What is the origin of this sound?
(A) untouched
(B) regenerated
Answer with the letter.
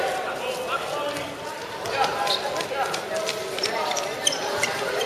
A